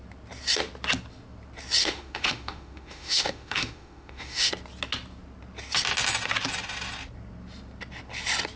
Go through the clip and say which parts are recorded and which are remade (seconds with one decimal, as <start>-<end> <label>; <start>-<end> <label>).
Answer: 0.0-1.8 recorded; 1.8-4.5 remade; 4.5-8.6 recorded